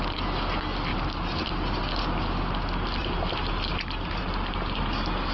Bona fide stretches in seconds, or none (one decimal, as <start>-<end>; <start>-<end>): 0.0-0.9; 2.0-3.0; 4.2-5.3